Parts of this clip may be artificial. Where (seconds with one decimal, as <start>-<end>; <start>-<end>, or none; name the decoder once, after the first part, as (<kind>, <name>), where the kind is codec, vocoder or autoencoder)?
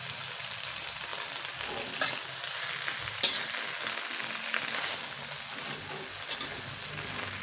none